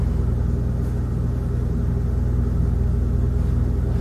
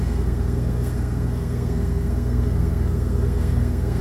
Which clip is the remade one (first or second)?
second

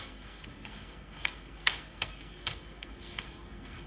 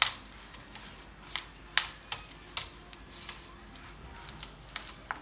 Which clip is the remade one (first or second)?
first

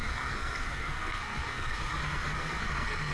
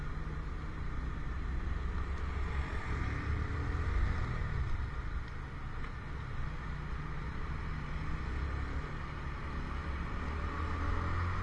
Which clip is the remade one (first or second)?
first